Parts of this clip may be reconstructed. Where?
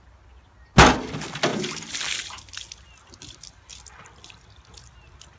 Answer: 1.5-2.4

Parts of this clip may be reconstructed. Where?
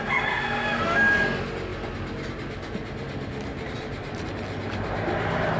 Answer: 3.5-4.2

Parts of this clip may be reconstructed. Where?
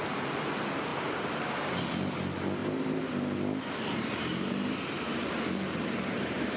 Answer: 2.6-6.6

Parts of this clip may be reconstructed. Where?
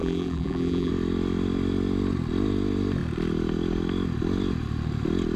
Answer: 0.0-0.9